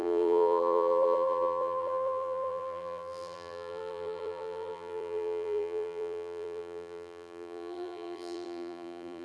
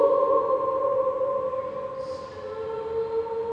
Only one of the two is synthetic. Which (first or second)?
first